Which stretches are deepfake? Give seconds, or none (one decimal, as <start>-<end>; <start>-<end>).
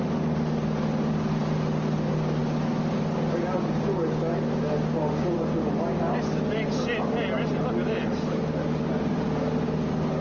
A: none